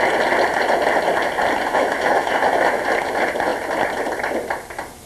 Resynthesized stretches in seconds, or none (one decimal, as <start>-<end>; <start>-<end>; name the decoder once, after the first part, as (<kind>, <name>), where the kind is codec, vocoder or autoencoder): 1.7-2.8 (autoencoder, DAC-VAE)